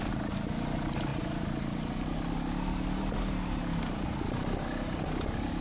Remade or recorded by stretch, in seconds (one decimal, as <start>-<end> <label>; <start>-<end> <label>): 0.0-5.6 recorded